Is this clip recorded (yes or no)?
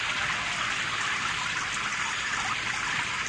yes